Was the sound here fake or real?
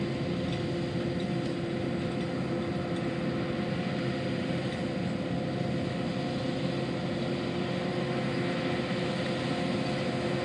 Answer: real